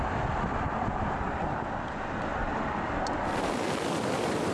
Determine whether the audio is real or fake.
real